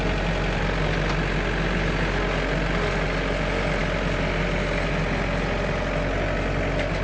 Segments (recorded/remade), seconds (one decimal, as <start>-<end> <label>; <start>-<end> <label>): 0.0-7.0 recorded